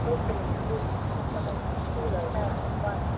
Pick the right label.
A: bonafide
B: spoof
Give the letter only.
A